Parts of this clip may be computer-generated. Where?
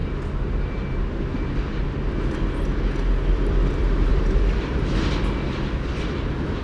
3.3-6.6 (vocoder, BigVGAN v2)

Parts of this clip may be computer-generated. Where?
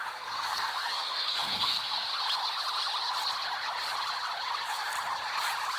0.0-2.1 (codec, SNAC)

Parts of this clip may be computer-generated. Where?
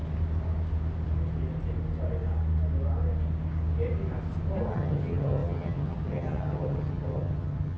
4.7-7.8 (vocoder, HiFi-GAN)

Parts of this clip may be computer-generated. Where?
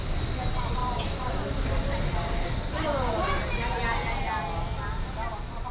0.8-4.2 (vocoder, BigVGAN v2)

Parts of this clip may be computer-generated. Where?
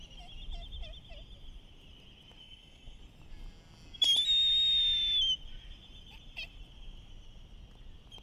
2.4-3.0 (codec, SNAC)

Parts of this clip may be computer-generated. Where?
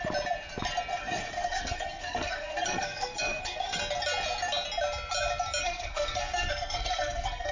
1.0-3.8 (codec, SNAC); 5.6-7.5